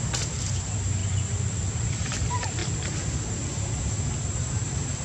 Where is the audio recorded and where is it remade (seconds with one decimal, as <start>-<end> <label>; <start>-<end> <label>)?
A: 0.0-1.0 remade; 1.0-1.5 recorded; 1.5-2.6 remade; 2.6-3.8 recorded; 3.8-5.0 remade